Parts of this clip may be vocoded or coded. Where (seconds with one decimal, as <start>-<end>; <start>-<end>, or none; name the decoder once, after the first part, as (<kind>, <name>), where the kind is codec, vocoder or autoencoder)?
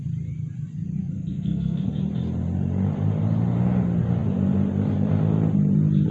1.0-2.0 (codec, SNAC)